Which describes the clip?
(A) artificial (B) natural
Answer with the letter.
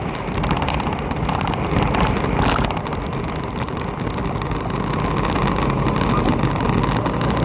B